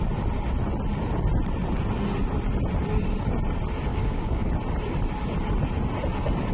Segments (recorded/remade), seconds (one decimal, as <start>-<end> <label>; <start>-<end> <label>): 0.0-3.9 recorded; 3.9-4.5 remade; 4.5-6.5 recorded